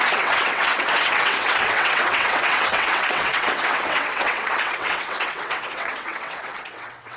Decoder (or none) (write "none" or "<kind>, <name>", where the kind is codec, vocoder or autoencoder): vocoder, WaveNeXt